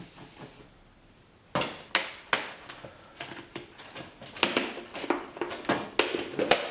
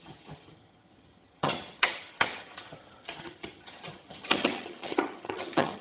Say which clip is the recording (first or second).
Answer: first